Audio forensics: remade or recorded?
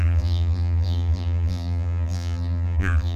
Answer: remade